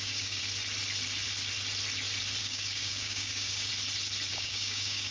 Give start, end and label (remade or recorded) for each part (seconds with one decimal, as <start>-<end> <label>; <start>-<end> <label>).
0.0-0.4 remade; 0.4-2.4 recorded; 2.4-3.7 remade; 3.7-4.3 recorded; 4.3-5.1 remade